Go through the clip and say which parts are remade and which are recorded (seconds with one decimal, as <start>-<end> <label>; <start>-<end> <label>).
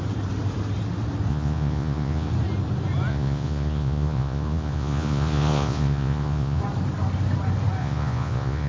0.0-1.3 recorded; 1.3-2.3 remade; 2.3-3.1 recorded; 3.1-6.6 remade; 6.6-7.8 recorded; 7.8-8.7 remade